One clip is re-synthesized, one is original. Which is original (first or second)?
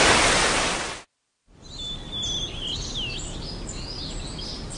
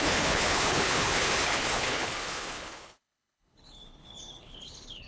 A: first